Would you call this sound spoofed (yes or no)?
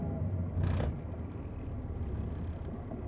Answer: no